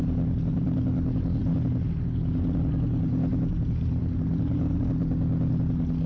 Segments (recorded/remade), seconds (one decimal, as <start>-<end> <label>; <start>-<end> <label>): 0.0-6.1 recorded